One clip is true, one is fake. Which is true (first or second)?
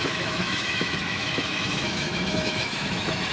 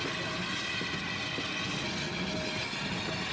second